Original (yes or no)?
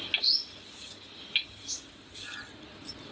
yes